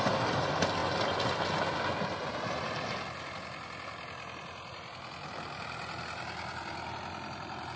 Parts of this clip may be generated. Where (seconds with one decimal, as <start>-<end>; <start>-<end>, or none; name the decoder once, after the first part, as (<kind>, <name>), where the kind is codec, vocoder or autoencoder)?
none